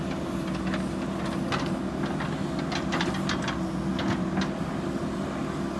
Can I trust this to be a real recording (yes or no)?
yes